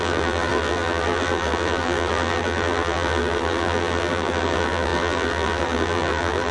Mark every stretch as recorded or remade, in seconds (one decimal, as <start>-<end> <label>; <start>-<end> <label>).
0.0-6.5 remade